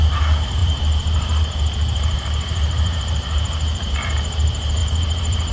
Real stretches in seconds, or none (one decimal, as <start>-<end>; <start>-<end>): none